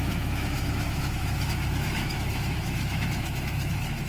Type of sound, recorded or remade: remade